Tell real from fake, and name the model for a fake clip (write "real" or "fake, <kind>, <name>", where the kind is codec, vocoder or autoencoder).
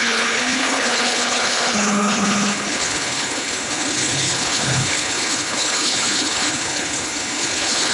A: fake, codec, HILCodec